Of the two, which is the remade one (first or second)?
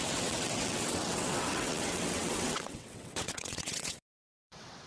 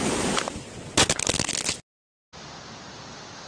first